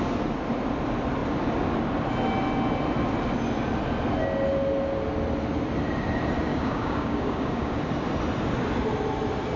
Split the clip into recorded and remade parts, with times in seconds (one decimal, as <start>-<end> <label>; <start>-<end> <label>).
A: 0.0-6.5 recorded; 6.5-7.8 remade; 7.8-9.6 recorded